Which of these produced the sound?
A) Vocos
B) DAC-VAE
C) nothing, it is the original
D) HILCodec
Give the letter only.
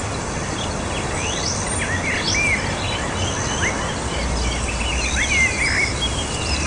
C